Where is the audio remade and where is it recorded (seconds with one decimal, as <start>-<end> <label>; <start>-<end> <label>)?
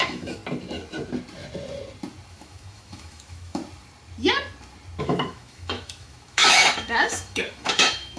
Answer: 0.0-0.4 remade; 0.4-2.3 recorded; 2.3-3.6 remade; 3.6-5.0 recorded; 5.0-8.2 remade